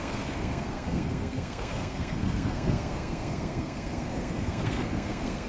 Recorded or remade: remade